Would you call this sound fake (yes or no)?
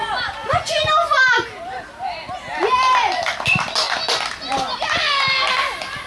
no